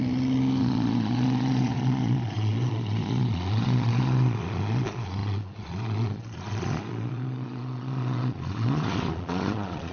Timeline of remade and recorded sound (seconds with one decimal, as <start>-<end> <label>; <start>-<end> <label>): 0.0-0.6 recorded; 0.6-9.9 remade